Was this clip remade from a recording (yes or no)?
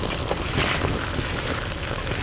no